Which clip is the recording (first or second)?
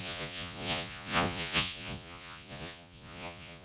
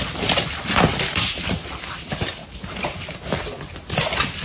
second